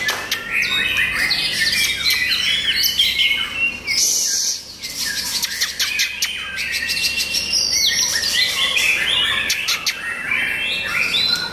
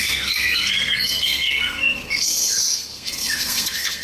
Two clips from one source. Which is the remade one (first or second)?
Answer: second